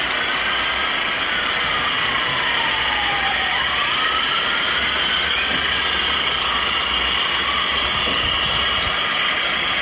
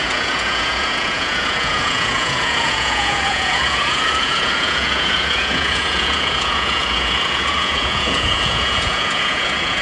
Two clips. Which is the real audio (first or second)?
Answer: first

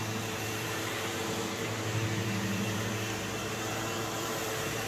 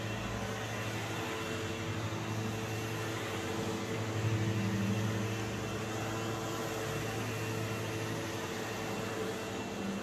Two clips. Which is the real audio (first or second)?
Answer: second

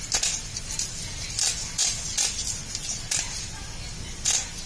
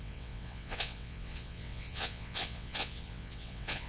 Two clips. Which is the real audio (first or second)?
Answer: first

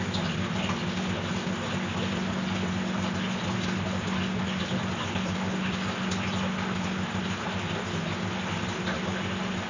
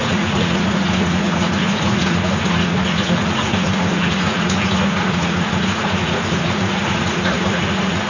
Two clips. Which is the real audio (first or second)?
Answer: first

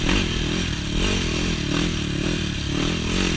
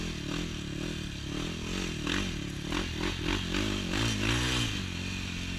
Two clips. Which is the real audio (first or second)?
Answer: second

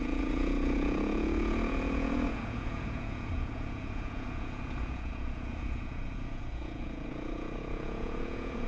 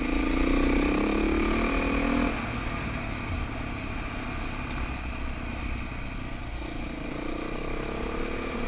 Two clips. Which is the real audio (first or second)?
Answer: second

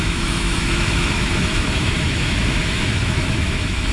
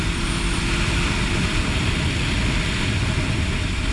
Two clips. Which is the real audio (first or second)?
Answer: second